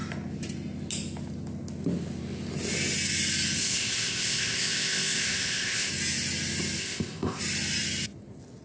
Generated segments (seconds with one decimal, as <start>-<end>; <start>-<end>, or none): 3.6-5.9; 6.8-7.4